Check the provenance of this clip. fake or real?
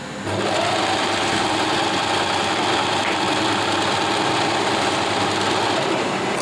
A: real